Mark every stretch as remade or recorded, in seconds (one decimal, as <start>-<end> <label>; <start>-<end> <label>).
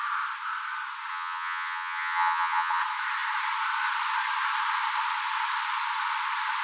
0.0-1.1 recorded; 1.1-2.8 remade; 2.8-6.6 recorded